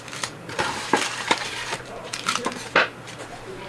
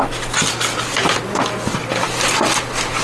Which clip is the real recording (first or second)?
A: second